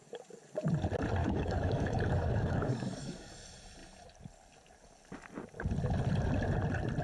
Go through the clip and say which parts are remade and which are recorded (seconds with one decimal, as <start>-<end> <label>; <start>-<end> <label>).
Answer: 0.0-1.2 recorded; 1.2-3.3 remade; 3.3-7.0 recorded